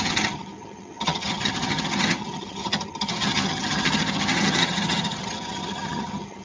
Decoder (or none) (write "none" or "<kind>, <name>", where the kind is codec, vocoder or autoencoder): vocoder, HiFi-GAN